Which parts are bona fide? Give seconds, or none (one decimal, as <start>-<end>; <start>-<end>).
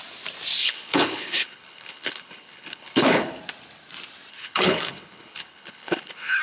0.0-0.6; 3.4-4.3